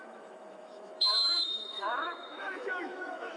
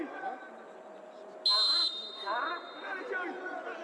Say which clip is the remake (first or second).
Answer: first